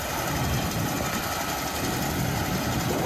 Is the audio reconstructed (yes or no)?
no